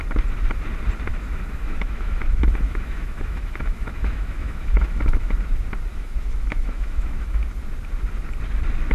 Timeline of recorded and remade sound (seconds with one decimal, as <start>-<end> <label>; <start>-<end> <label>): 0.0-1.1 recorded; 1.1-5.3 remade; 5.3-5.9 recorded; 5.9-7.4 remade; 7.4-8.9 recorded